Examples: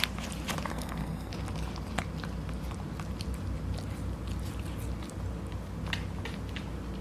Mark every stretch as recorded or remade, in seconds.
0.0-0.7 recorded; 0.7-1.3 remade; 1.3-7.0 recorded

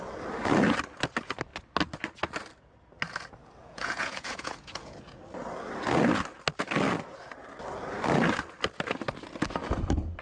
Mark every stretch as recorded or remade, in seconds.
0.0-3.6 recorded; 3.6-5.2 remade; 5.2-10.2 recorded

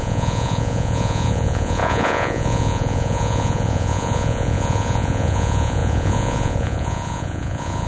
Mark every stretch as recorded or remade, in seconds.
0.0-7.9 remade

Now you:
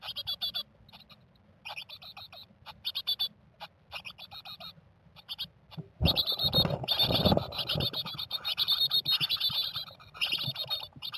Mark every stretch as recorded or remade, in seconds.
0.0-11.2 recorded

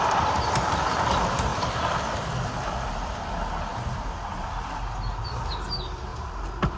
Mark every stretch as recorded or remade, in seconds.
0.0-1.5 recorded; 1.5-3.2 remade; 3.2-3.7 recorded; 3.7-4.8 remade; 4.8-6.1 recorded; 6.1-6.8 remade